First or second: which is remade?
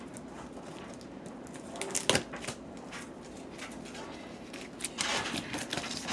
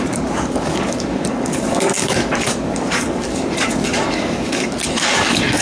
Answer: second